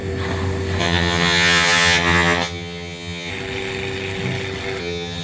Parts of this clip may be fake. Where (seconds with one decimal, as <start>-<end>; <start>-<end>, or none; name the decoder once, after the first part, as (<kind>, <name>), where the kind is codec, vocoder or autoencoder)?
0.8-3.3 (vocoder, HiFi-GAN); 4.8-5.2